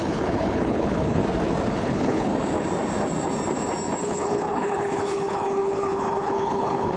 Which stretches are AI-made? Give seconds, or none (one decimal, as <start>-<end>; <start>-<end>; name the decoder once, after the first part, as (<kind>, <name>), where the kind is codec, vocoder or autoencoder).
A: 0.0-1.2 (codec, HILCodec); 1.8-2.3; 4.0-7.0